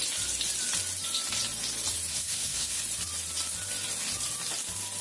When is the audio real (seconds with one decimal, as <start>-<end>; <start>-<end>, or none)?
0.0-2.1; 2.8-5.0